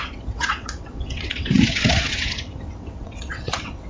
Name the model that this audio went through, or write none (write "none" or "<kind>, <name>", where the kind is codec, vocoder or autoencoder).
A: vocoder, WaveNeXt